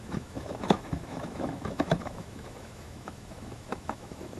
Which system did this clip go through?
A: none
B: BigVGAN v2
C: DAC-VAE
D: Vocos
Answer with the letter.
C